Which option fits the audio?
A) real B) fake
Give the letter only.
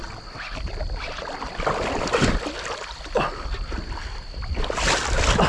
A